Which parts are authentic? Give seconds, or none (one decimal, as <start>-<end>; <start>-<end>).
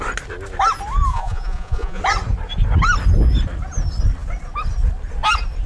0.0-1.1; 2.0-5.7